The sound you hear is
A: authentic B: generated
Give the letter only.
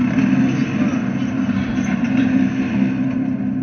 A